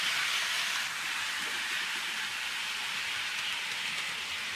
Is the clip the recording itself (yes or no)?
yes